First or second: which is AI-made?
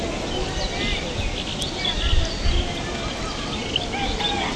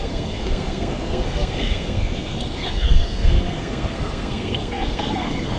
second